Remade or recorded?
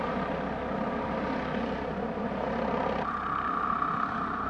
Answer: recorded